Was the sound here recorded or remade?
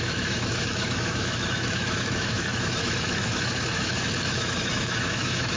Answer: remade